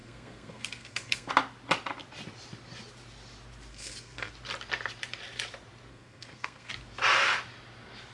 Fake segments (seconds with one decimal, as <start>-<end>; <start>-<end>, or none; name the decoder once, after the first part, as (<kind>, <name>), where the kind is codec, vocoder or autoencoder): 0.0-1.3 (codec, SNAC); 3.7-4.3; 5.9-6.7